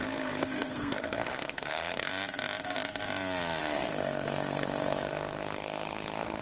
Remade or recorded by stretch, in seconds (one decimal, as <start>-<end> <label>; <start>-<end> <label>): 0.0-2.1 remade; 2.1-3.6 recorded; 3.6-6.4 remade